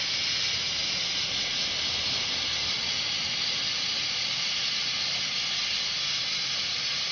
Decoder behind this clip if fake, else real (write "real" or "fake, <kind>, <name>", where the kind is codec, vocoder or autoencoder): real